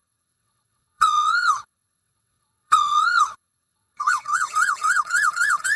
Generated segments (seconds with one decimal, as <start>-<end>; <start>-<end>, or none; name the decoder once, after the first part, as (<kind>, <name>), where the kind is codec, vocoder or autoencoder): 0.0-5.8 (vocoder, WaveNeXt)